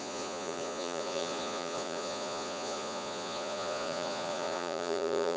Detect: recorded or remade remade